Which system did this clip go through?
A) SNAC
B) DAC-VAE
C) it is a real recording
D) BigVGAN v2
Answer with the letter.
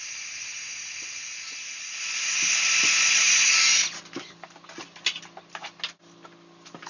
C